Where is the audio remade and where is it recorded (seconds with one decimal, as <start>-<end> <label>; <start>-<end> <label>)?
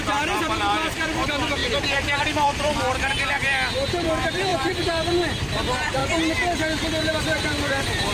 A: 0.0-1.6 remade; 1.6-2.2 recorded; 2.2-3.4 remade; 3.4-4.1 recorded; 4.1-6.0 remade; 6.0-7.2 recorded; 7.2-8.1 remade